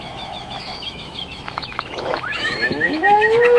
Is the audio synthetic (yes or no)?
yes